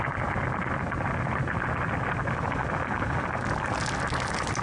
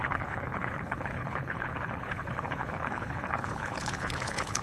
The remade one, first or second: second